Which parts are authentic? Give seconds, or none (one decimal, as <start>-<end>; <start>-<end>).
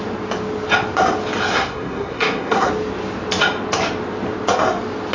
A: 0.0-1.5; 2.7-5.1